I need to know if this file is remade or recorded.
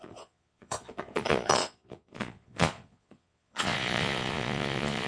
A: remade